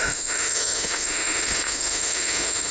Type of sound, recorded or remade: remade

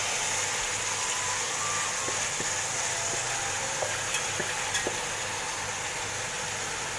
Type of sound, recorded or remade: recorded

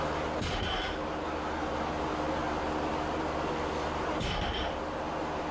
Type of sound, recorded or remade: recorded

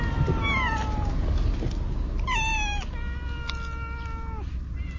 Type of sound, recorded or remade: recorded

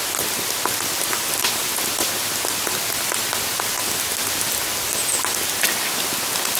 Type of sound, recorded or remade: recorded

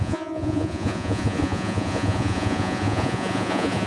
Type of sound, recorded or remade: remade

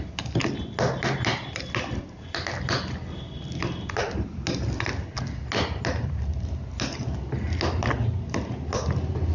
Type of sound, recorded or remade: recorded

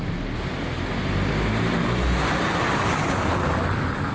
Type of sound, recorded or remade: recorded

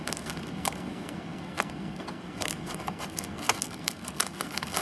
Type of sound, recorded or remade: remade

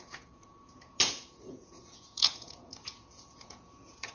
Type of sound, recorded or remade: remade